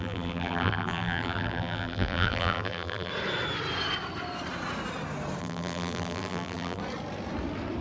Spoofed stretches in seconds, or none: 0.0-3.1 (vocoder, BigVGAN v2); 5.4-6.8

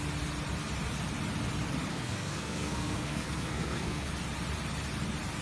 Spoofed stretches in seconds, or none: 1.9-4.1 (codec, SNAC)

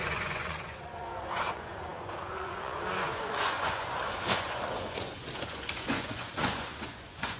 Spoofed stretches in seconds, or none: 0.0-7.4 (vocoder, Vocos)

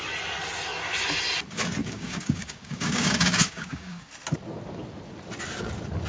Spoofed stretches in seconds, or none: 1.8-4.1 (codec, DAC)

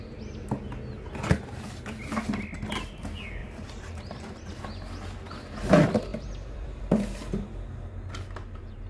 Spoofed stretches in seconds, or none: 3.4-4.6 (vocoder, BigVGAN v2); 6.1-6.8

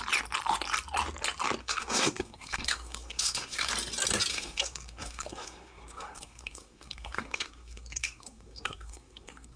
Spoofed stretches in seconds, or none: 1.6-3.7 (codec, SNAC); 4.3-9.6

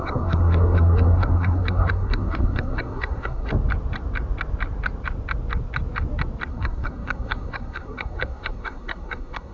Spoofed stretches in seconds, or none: 0.0-3.5 (codec, SNAC); 6.5-9.5